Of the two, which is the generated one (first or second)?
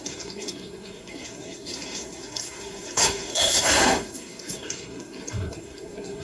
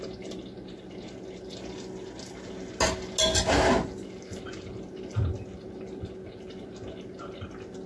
first